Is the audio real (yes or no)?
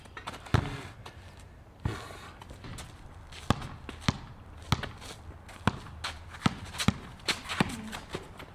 yes